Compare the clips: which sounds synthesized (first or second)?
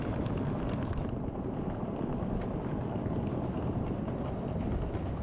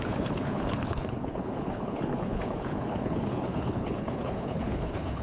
second